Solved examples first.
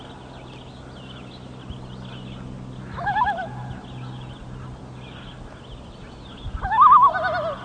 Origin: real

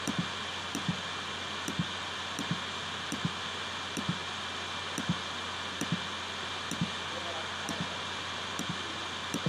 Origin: real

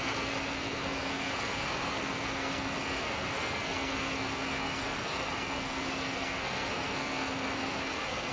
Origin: fake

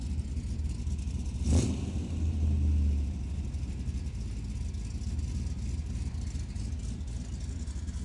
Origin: real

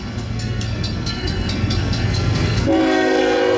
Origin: fake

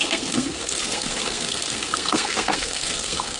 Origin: fake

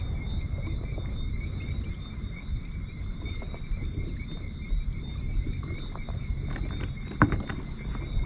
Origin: real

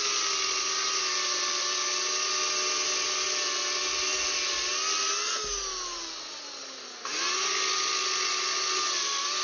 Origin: real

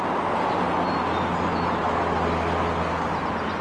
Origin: real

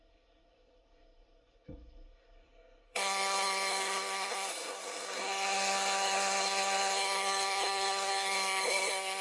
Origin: fake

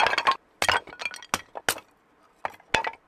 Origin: real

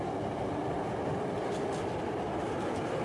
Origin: real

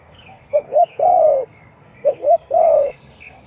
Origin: fake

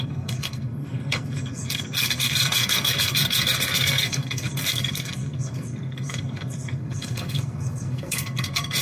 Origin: fake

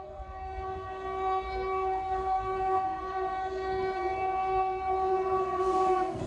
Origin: fake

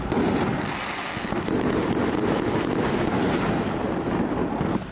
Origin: real